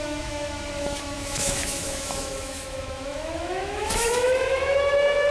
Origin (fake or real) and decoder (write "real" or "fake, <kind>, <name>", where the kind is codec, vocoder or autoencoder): fake, autoencoder, DAC-VAE